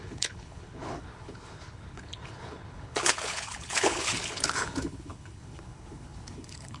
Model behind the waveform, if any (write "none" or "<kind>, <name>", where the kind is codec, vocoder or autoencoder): codec, HILCodec